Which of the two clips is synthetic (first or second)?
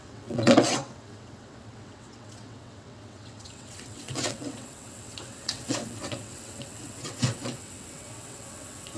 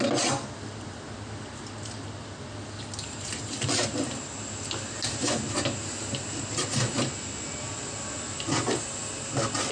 first